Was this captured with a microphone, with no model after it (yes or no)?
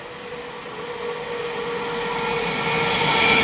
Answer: yes